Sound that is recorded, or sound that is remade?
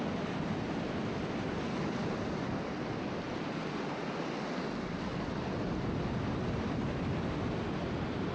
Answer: recorded